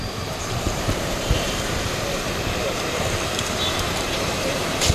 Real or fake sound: fake